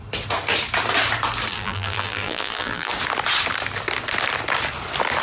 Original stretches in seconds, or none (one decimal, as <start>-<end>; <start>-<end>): 0.0-1.5; 2.9-5.2